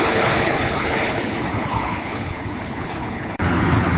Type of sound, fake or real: fake